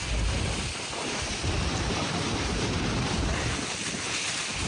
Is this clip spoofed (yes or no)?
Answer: no